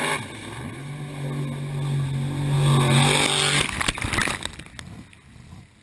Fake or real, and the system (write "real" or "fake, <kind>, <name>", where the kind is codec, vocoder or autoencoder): real